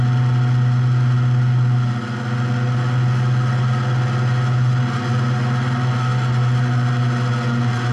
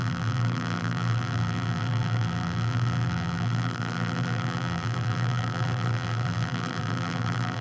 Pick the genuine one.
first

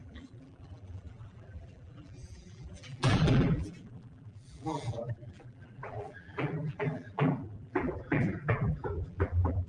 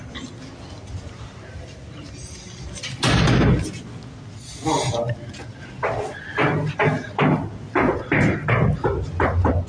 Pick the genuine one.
second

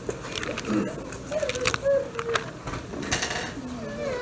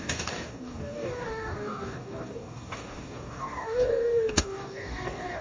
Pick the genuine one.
first